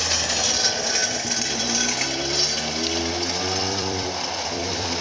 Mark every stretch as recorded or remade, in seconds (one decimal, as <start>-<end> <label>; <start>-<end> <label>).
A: 0.0-3.6 recorded; 3.6-5.0 remade